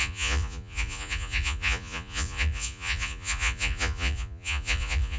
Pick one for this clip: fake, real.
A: fake